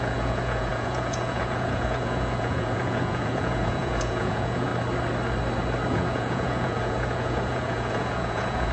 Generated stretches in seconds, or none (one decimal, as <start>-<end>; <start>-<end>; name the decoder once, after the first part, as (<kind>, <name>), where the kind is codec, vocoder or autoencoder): 0.0-4.7 (vocoder, Vocos); 5.9-8.7